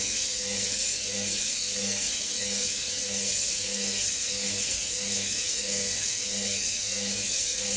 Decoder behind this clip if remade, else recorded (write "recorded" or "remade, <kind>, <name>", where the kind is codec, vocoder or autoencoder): remade, codec, SNAC